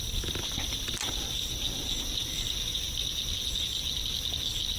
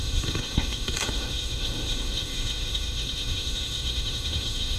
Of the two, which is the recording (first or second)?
first